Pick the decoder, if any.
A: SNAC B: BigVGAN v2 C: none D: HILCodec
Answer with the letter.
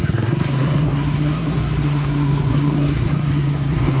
A